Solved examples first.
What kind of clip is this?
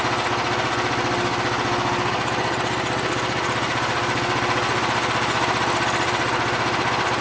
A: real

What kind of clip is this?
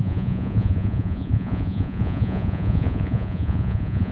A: fake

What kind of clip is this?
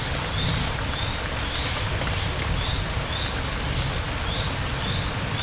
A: real